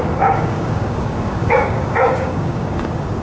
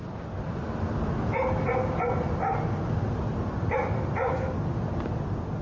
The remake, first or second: first